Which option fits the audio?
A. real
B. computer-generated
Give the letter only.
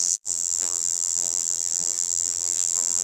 B